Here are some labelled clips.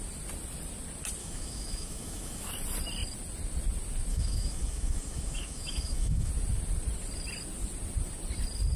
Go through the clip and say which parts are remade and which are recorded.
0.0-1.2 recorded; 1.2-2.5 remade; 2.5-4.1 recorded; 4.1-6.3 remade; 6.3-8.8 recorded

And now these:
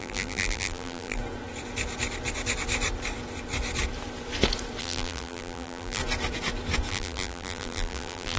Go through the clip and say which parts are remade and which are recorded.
0.0-1.2 remade; 1.2-4.8 recorded; 4.8-6.0 remade; 6.0-6.9 recorded; 6.9-8.4 remade

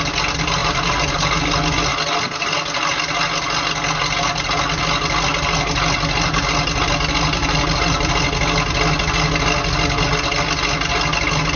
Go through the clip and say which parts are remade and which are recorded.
0.0-0.6 recorded; 0.6-1.4 remade; 1.4-7.4 recorded; 7.4-8.2 remade; 8.2-11.6 recorded

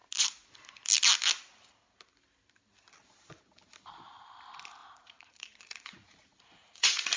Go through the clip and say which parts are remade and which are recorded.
0.0-4.8 recorded; 4.8-7.2 remade

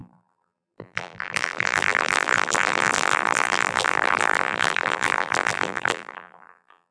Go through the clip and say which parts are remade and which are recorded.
0.0-6.9 remade

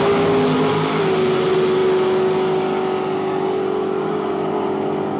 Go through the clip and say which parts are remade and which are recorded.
0.0-5.2 recorded

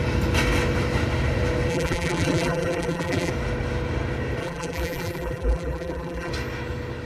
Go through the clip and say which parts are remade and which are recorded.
0.0-1.7 recorded; 1.7-3.3 remade; 3.3-4.4 recorded; 4.4-6.3 remade; 6.3-7.0 recorded